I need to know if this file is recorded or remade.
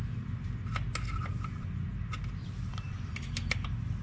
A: recorded